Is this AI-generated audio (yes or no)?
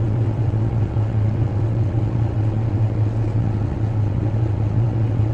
yes